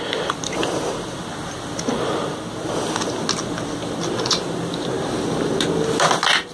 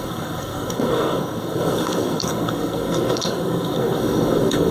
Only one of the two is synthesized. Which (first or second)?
second